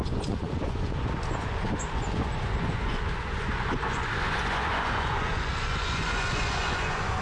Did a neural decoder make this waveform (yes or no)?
yes